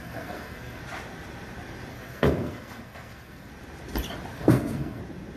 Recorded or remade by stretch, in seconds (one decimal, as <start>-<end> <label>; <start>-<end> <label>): 0.0-0.8 remade; 0.8-1.9 recorded; 1.9-3.5 remade; 3.5-4.3 recorded; 4.3-5.0 remade; 5.0-5.4 recorded